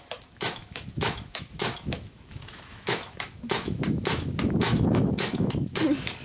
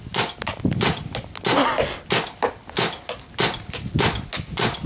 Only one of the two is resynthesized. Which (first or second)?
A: first